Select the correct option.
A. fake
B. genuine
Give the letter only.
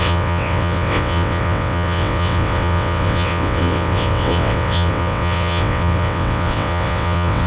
A